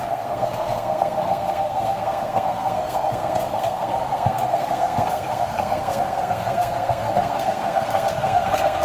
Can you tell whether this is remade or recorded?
remade